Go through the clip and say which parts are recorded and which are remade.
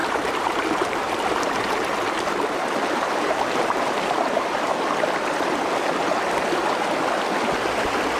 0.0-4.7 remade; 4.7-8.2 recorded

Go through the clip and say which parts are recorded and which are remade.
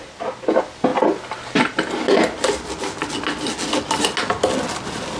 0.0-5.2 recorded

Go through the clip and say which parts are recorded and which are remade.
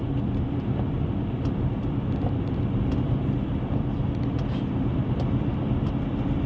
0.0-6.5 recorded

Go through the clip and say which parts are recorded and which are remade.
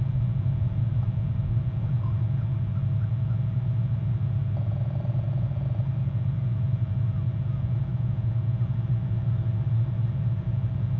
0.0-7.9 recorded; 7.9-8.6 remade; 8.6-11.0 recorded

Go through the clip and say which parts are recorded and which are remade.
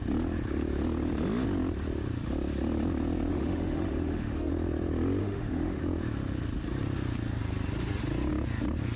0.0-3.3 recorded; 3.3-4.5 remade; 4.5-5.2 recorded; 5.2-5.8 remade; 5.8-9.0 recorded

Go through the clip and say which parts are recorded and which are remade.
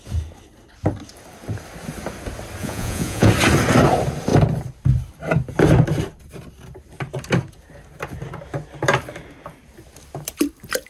0.0-2.6 recorded; 2.6-3.3 remade; 3.3-10.9 recorded